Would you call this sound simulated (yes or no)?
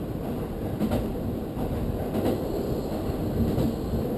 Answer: no